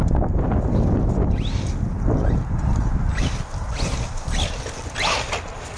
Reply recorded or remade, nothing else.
recorded